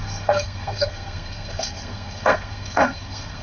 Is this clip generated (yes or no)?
yes